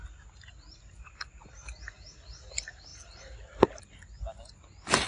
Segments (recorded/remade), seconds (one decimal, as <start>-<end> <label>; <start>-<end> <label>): 0.0-5.1 recorded